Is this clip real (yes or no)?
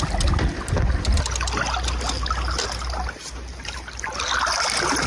yes